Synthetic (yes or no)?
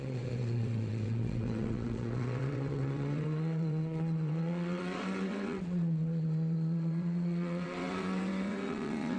yes